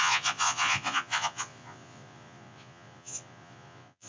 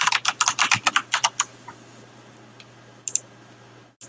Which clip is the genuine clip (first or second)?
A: second